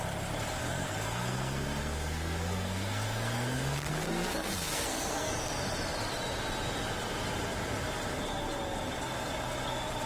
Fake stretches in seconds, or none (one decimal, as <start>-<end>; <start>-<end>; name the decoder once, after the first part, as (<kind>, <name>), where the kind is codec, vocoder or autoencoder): 0.6-5.3 (codec, SNAC)